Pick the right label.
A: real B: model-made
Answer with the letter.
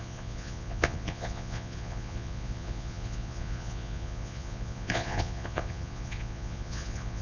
B